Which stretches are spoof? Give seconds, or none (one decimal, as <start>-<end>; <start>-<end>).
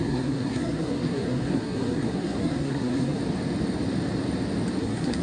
0.0-3.2; 4.8-5.2